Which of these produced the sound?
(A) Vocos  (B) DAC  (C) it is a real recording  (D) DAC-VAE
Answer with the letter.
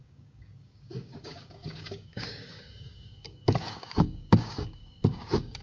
B